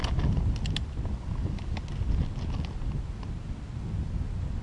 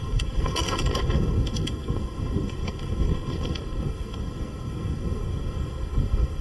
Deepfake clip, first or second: second